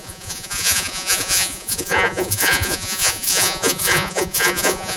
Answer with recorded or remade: remade